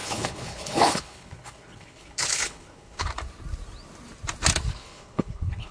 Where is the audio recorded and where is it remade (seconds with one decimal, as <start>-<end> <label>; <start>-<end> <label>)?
0.0-3.1 remade; 3.1-4.7 recorded; 4.7-5.7 remade